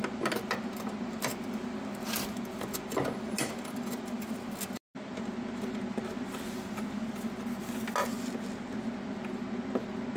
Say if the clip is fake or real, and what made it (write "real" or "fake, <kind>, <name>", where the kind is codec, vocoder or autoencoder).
real